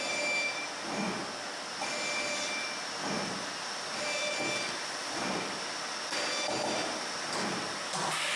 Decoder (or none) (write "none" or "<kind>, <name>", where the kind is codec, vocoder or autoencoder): none